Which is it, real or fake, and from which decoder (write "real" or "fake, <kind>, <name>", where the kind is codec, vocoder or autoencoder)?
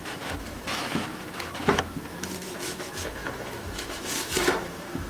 fake, autoencoder, DAC-VAE